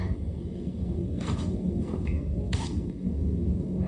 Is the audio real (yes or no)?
no